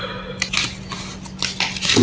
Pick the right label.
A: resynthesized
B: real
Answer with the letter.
B